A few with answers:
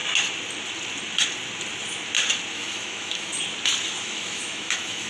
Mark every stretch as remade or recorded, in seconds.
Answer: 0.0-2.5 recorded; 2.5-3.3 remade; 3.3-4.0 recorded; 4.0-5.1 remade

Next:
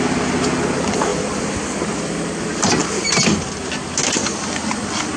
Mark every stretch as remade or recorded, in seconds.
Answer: 0.0-5.2 recorded

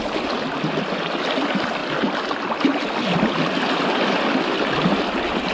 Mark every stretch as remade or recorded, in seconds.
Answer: 0.0-5.5 recorded

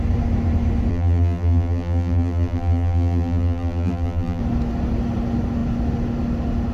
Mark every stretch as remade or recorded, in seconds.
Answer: 0.0-0.9 recorded; 0.9-4.4 remade; 4.4-6.7 recorded